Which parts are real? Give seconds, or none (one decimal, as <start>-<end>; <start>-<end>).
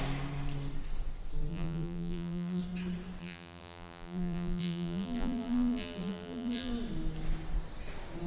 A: 0.0-1.5; 2.6-3.2; 6.7-8.3